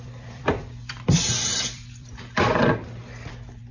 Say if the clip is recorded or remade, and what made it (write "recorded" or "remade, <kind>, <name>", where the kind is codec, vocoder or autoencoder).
remade, vocoder, BigVGAN v2